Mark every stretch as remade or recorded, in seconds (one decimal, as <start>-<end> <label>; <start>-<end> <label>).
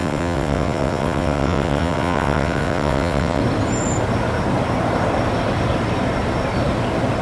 0.0-3.4 remade; 3.4-7.2 recorded